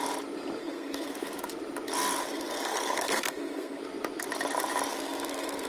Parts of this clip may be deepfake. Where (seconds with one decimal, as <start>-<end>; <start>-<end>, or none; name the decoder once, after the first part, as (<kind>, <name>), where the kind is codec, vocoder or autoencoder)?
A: 0.6-1.4 (codec, SNAC); 2.2-3.8; 4.9-5.7